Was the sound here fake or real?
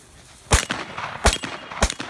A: real